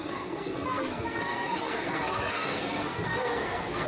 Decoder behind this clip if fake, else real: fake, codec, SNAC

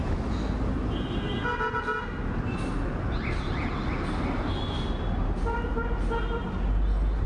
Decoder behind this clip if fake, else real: real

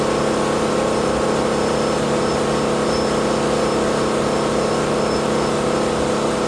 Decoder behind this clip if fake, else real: real